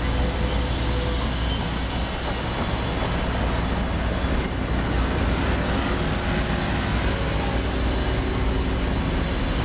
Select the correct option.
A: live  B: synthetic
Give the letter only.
A